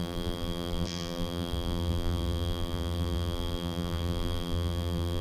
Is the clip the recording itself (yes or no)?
no